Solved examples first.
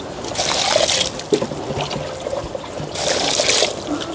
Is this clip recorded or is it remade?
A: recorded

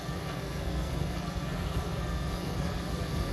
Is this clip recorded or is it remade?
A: remade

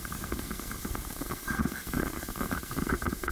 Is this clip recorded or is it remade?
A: remade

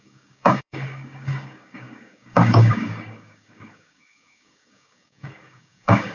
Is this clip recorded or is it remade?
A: remade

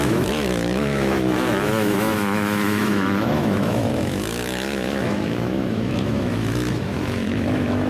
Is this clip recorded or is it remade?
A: remade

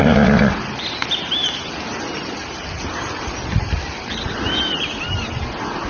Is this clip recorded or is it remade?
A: recorded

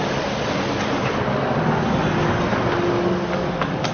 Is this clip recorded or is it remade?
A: recorded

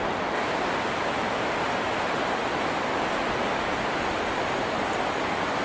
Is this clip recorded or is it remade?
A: recorded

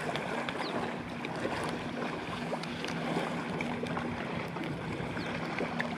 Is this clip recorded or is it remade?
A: recorded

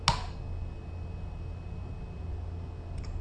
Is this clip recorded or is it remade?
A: recorded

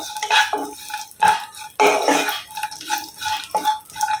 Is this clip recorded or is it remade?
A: recorded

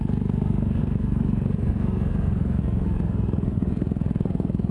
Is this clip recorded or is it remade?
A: remade